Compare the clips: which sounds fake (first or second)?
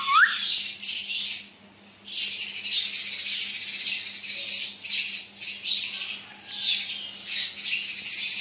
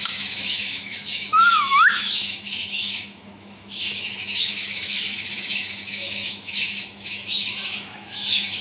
second